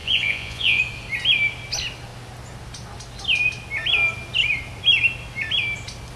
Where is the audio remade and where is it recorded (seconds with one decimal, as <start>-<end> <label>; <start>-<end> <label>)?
0.0-0.8 remade; 0.8-6.2 recorded